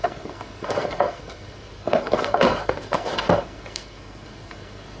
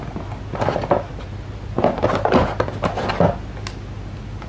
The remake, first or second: first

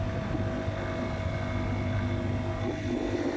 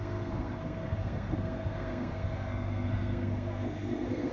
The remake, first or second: second